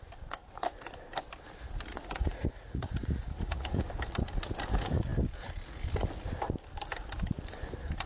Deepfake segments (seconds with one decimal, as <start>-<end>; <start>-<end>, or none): 1.9-3.8

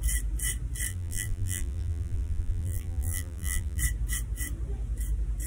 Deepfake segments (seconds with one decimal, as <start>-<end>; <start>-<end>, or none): 0.9-3.8